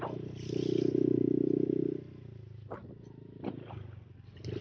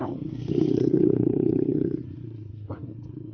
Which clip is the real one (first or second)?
first